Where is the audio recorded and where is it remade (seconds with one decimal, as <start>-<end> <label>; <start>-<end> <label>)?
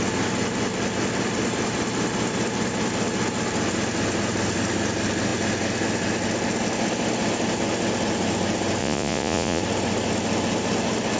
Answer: 0.0-8.8 recorded; 8.8-9.6 remade; 9.6-11.2 recorded